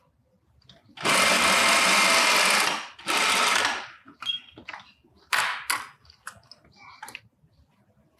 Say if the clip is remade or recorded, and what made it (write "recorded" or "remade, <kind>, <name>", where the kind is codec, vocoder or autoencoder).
recorded